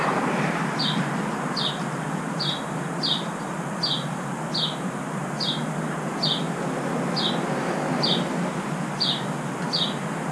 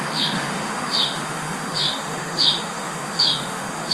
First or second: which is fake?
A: second